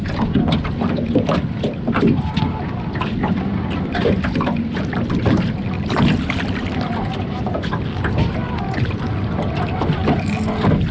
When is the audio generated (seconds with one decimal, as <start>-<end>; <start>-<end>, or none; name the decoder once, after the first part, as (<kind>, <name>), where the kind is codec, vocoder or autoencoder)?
none

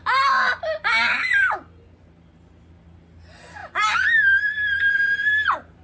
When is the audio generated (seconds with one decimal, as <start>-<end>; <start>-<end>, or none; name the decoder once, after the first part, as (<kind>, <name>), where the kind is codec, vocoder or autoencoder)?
none

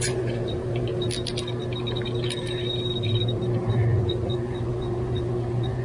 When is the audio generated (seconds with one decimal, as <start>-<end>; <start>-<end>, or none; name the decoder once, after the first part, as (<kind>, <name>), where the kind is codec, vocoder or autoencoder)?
0.0-0.9 (vocoder, Vocos); 3.7-5.8